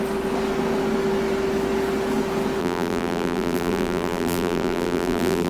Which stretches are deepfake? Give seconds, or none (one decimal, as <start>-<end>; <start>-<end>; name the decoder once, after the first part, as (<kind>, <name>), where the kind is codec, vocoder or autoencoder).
2.6-5.5 (vocoder, BigVGAN v2)